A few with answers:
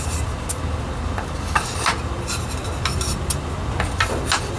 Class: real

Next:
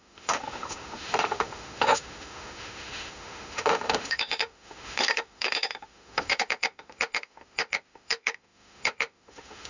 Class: fake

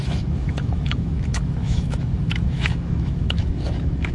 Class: fake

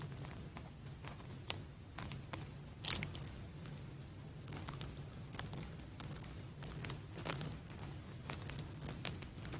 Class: real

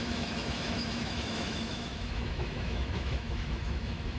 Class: fake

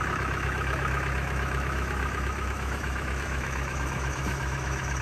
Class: fake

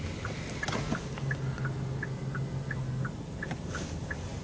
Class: real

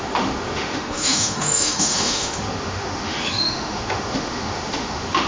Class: fake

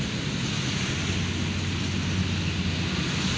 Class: real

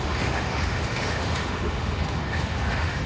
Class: fake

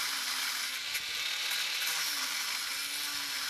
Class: real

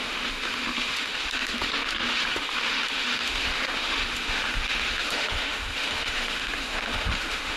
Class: fake